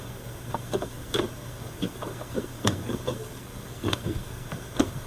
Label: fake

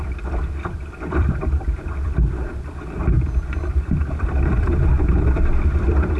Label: fake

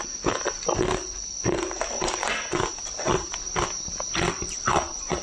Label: real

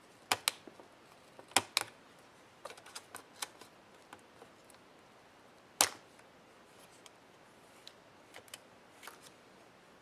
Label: real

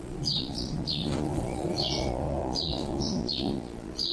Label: fake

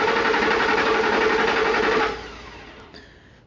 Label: real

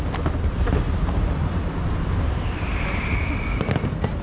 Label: real